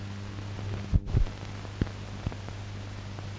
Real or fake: real